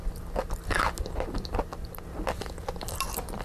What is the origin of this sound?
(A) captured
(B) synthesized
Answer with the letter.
A